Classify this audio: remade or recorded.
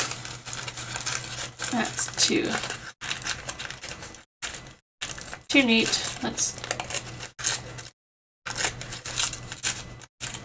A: recorded